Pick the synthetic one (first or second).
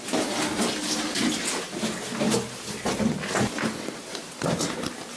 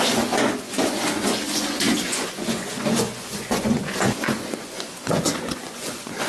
second